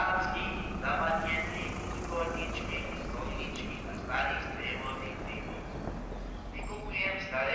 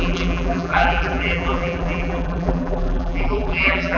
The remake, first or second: second